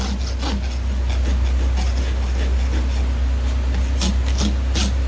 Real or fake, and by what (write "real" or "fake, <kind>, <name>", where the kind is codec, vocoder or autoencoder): real